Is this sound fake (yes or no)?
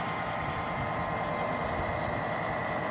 no